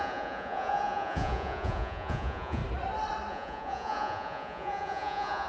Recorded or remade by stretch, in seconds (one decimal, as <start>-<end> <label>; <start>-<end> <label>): 0.0-2.6 remade; 2.6-3.3 recorded; 3.3-5.5 remade